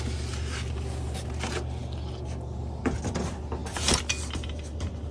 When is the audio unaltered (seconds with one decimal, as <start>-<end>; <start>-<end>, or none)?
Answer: 0.0-5.1